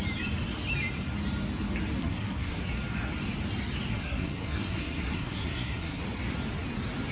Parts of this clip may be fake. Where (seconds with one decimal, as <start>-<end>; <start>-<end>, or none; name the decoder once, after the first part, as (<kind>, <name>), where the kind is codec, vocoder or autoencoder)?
2.0-2.6 (codec, SNAC); 3.9-6.0